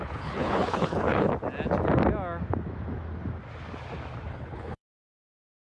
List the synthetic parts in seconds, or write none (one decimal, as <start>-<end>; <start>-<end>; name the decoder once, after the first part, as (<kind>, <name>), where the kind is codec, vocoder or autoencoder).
0.0-1.3 (codec, HILCodec); 4.3-5.8